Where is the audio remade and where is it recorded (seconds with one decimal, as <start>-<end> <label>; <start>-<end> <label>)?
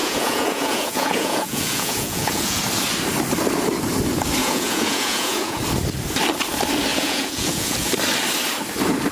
0.0-2.6 remade; 2.6-4.4 recorded; 4.4-5.6 remade; 5.6-6.9 recorded; 6.9-7.9 remade; 7.9-9.1 recorded